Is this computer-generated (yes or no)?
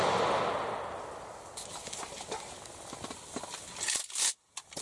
no